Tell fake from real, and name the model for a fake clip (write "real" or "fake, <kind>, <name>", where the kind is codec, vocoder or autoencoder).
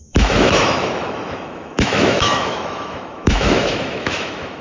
fake, autoencoder, DAC-VAE